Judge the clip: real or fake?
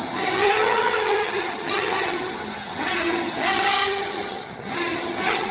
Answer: fake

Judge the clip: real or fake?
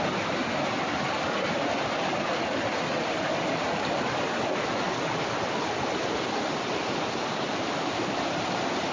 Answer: real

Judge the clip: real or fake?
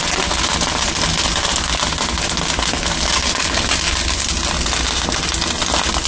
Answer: real